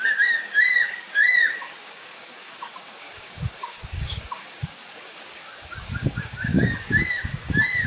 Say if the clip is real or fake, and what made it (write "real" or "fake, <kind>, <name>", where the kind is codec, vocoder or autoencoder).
fake, codec, DAC